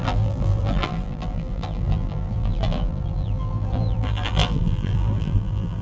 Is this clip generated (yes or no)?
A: yes